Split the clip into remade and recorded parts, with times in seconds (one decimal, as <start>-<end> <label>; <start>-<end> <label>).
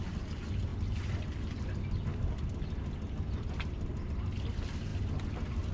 0.0-5.7 recorded